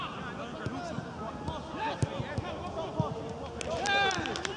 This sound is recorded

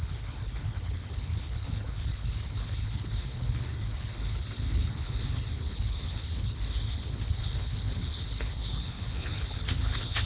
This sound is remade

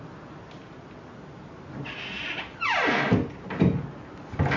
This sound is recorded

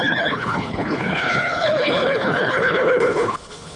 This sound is remade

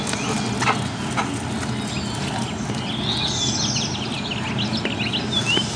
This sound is recorded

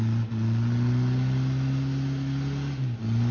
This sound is recorded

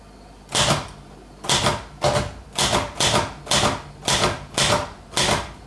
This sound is recorded